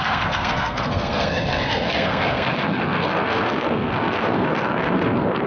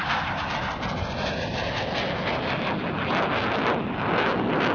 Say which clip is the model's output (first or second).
first